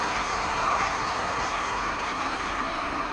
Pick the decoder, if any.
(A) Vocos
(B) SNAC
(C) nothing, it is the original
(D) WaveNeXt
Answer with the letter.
B